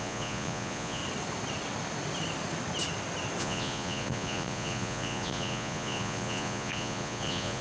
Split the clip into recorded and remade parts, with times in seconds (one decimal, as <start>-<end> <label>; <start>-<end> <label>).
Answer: 0.0-1.0 remade; 1.0-3.4 recorded; 3.4-7.6 remade